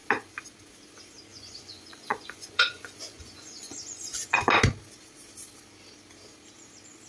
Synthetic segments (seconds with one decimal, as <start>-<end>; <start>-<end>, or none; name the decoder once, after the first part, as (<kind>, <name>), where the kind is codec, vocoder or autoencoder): 1.3-4.5 (vocoder, Vocos)